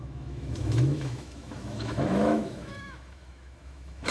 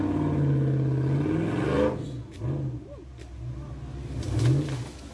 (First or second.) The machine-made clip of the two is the first